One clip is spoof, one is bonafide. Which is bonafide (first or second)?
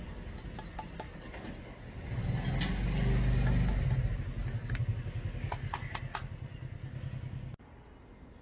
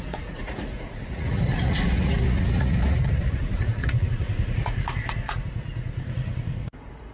first